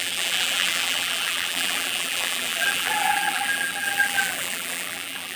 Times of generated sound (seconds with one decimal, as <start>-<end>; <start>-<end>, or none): 0.0-5.4